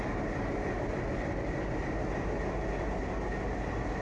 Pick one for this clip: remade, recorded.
recorded